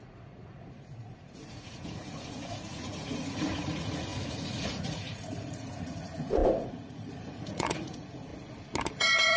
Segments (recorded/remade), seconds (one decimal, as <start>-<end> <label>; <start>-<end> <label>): 0.0-8.3 remade; 8.3-8.9 recorded; 8.9-9.4 remade